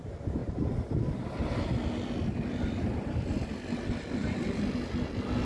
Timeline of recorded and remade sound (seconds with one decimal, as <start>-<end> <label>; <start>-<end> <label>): 0.0-5.5 recorded